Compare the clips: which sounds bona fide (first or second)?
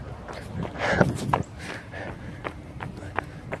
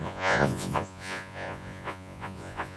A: first